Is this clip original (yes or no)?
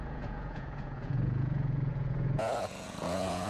no